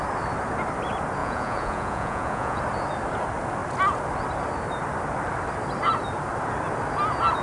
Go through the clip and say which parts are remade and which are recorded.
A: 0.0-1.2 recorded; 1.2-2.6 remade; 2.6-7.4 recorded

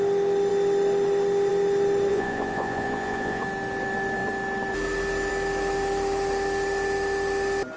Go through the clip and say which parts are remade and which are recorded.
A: 0.0-2.1 recorded; 2.1-3.4 remade; 3.4-7.8 recorded

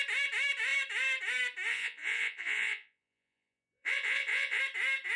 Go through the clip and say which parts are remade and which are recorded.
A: 0.0-1.7 recorded; 1.7-4.6 remade; 4.6-5.2 recorded

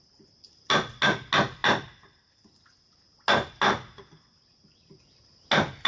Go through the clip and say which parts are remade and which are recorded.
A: 0.0-5.9 recorded

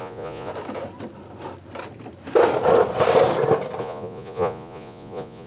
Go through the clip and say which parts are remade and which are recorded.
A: 0.0-0.5 remade; 0.5-3.8 recorded; 3.8-5.5 remade

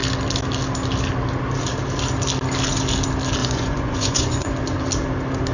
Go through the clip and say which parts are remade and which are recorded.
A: 0.0-3.4 recorded; 3.4-4.5 remade; 4.5-5.5 recorded

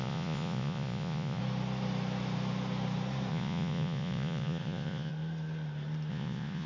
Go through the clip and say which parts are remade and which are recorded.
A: 0.0-1.4 remade; 1.4-3.3 recorded; 3.3-5.1 remade; 5.1-6.1 recorded; 6.1-6.7 remade